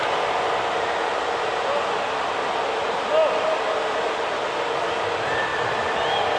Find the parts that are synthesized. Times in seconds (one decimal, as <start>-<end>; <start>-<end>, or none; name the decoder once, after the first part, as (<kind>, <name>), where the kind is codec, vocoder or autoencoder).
none